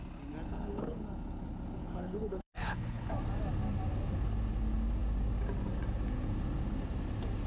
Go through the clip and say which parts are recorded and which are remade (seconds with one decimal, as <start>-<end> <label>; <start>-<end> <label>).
0.0-0.5 recorded; 0.5-1.0 remade; 1.0-1.8 recorded; 1.8-3.1 remade; 3.1-7.5 recorded